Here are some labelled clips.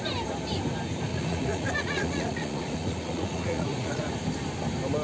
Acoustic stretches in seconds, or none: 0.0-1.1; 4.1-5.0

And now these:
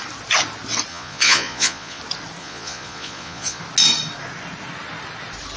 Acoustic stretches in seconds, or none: 0.0-0.9; 2.0-2.4; 3.6-5.6

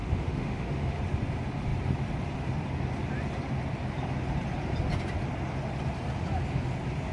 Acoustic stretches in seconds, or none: 1.0-7.1

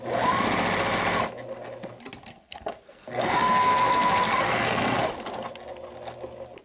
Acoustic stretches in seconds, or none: 0.0-2.3; 5.0-6.6

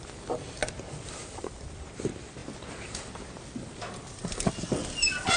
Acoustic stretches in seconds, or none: 0.0-5.4